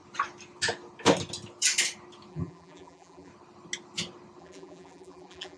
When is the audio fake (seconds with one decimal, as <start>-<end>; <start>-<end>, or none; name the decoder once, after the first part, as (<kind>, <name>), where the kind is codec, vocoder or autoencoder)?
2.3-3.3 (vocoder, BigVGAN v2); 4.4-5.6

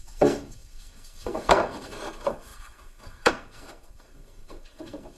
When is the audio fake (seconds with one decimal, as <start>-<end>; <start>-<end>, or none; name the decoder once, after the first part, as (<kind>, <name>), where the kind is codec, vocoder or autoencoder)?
0.0-5.2 (codec, SNAC)

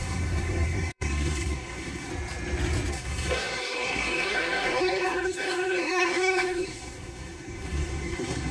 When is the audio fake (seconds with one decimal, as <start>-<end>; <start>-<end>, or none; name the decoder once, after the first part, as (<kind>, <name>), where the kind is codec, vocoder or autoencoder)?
0.0-2.1 (codec, SNAC); 2.9-8.5

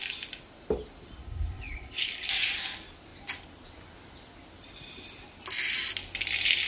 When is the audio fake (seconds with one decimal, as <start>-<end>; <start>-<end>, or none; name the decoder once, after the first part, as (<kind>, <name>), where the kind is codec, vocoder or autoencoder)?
1.2-2.3 (codec, HILCodec)

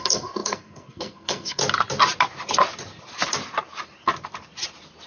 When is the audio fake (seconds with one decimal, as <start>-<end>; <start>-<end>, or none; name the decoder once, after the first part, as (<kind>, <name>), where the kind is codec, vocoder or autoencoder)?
0.0-1.6 (codec, SNAC)